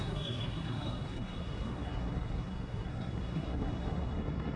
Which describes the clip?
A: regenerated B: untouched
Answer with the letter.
A